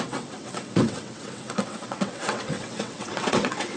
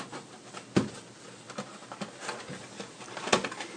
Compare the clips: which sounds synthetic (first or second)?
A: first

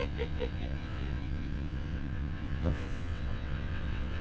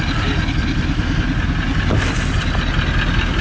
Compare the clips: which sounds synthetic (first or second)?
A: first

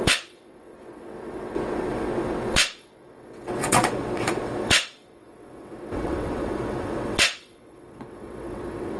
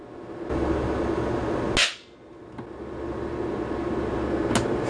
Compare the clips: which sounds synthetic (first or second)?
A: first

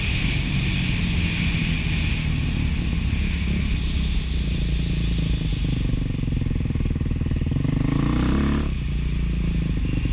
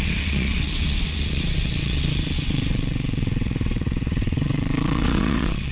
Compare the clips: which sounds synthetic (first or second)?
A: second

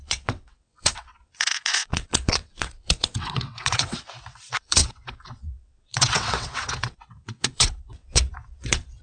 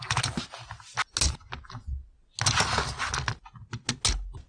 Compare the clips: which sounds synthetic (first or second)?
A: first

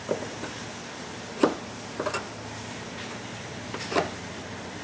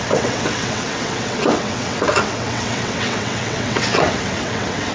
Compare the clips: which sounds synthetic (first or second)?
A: second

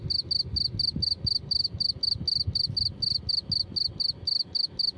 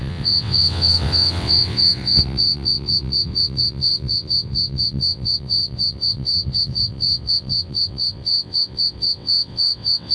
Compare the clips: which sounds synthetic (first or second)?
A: second